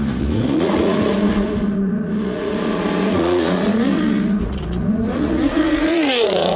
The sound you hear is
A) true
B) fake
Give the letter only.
B